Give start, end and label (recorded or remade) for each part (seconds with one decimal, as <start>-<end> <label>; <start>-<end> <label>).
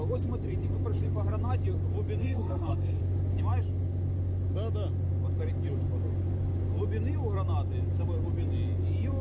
0.0-2.2 recorded; 2.2-3.0 remade; 3.0-9.2 recorded